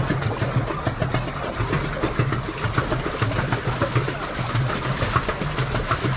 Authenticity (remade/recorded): recorded